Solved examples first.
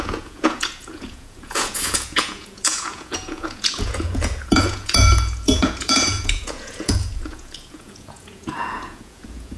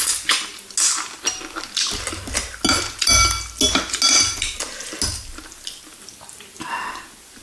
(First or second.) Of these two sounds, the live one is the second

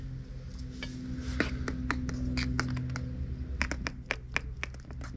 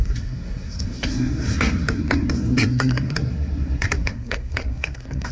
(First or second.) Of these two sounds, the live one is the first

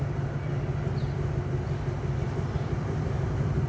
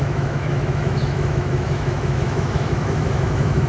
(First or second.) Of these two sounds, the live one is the first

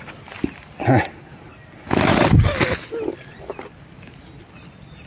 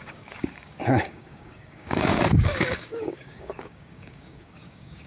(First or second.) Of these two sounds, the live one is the first